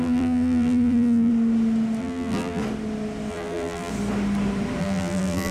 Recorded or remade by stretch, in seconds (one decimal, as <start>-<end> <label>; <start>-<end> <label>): 0.0-1.3 remade; 1.3-2.0 recorded; 2.0-2.6 remade; 2.6-3.3 recorded; 3.3-3.9 remade; 3.9-4.8 recorded; 4.8-5.5 remade